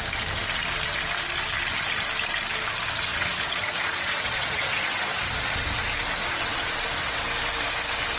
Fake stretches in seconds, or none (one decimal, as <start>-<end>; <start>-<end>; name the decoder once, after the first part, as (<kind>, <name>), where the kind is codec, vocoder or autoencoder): 3.1-5.2 (vocoder, Vocos); 6.2-6.8